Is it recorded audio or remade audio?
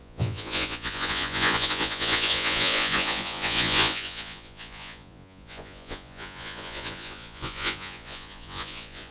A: remade